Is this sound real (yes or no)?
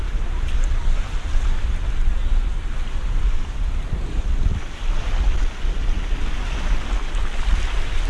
yes